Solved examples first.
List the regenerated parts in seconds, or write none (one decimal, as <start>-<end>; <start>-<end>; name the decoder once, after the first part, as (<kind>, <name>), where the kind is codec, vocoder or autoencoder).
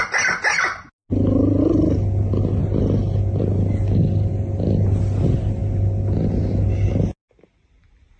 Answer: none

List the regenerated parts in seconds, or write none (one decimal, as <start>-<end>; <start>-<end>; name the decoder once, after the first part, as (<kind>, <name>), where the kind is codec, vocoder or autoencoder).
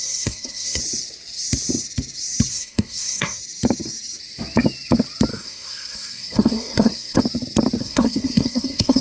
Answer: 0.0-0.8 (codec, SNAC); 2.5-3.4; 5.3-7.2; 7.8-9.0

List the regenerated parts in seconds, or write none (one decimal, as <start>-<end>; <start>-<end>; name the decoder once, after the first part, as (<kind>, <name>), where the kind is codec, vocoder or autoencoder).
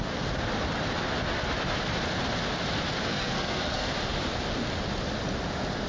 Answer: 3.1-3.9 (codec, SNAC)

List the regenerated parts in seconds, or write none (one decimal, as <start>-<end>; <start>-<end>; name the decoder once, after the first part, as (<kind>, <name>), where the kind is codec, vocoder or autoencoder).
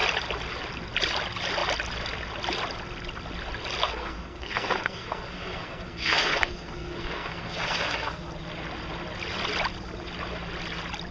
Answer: 3.8-8.2 (codec, SNAC)